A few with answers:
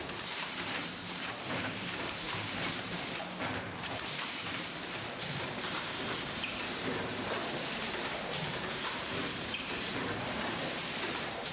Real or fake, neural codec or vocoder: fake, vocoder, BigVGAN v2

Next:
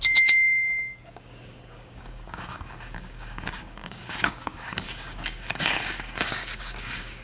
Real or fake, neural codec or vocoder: fake, codec, DAC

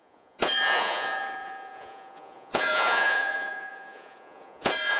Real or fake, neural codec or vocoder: fake, vocoder, Vocos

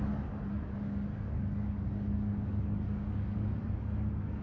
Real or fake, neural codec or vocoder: fake, codec, DAC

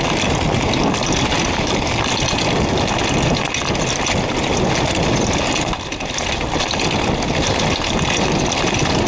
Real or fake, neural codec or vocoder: real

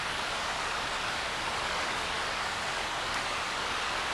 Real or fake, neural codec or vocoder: fake, codec, DAC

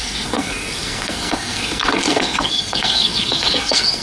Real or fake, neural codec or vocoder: fake, codec, SNAC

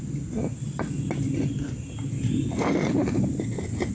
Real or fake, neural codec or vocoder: real